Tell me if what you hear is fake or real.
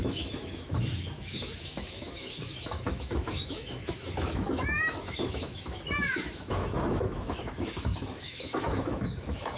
fake